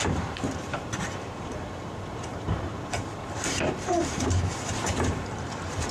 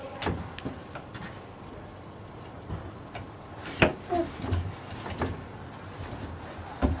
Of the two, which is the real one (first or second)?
second